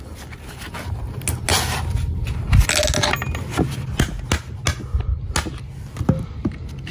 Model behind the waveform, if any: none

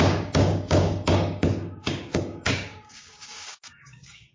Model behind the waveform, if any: codec, DAC